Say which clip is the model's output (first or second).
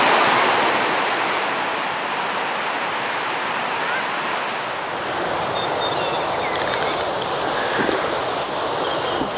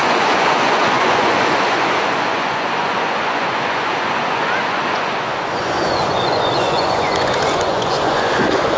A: second